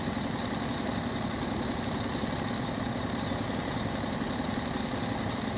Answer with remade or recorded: recorded